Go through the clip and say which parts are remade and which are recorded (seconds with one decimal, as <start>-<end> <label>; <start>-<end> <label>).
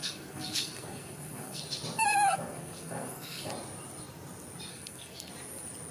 0.0-1.6 remade; 1.6-2.1 recorded; 2.1-3.5 remade; 3.5-4.7 recorded; 4.7-5.3 remade; 5.3-5.9 recorded